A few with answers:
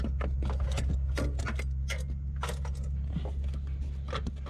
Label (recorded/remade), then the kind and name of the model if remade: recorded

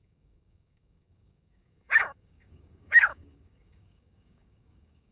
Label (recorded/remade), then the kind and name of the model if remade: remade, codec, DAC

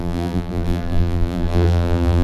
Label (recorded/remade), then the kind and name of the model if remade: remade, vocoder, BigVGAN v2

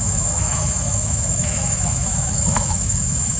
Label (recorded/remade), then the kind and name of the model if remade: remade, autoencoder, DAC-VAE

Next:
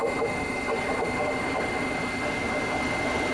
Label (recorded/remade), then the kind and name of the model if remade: recorded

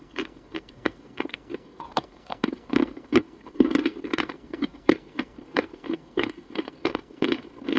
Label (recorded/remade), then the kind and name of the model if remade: remade, codec, SNAC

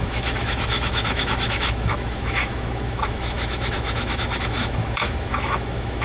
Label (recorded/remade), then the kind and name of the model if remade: remade, autoencoder, DAC-VAE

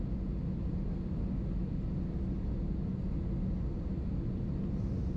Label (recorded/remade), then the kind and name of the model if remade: recorded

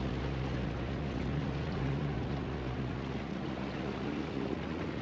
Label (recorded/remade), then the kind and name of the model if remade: remade, vocoder, Vocos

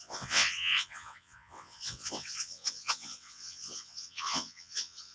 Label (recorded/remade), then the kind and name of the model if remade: remade, vocoder, WaveNeXt